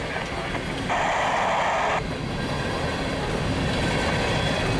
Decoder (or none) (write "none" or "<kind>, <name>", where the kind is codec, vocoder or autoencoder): none